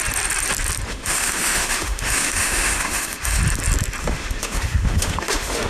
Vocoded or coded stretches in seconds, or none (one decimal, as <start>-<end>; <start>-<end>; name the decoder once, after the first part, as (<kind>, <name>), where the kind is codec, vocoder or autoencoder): 0.9-3.4 (autoencoder, DAC-VAE); 4.0-5.7